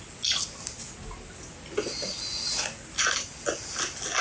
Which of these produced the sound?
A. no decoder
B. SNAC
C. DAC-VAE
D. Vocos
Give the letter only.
A